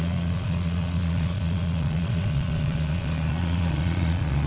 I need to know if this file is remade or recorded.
remade